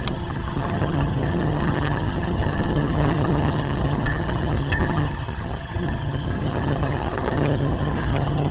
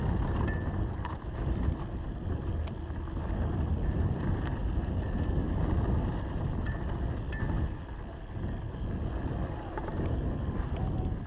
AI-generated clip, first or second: first